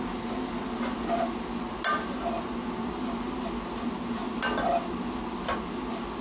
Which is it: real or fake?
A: real